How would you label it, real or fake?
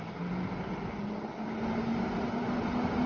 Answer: real